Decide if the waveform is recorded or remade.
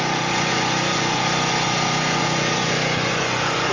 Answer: remade